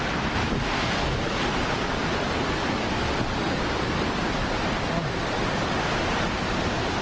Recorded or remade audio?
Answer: recorded